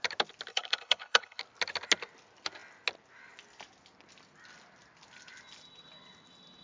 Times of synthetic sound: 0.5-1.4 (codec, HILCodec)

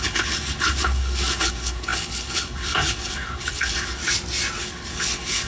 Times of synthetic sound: 0.0-4.0 (codec, HILCodec); 4.6-5.5

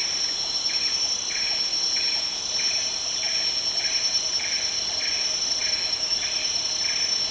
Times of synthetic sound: none

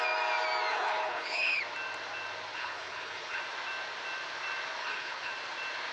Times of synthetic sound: 0.7-1.6 (codec, HILCodec); 2.5-3.4; 4.8-5.3

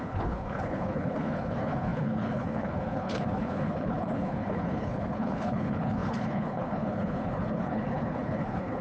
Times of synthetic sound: 0.0-8.8 (codec, HILCodec)

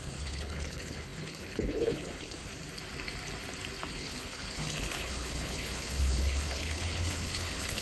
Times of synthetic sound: 0.0-2.5 (codec, HILCodec); 3.9-7.8

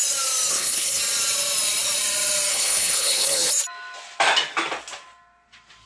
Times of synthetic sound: 0.5-1.0 (codec, HILCodec); 2.5-3.5

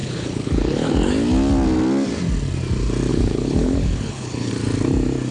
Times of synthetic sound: 0.0-0.9 (codec, HILCodec); 3.1-4.5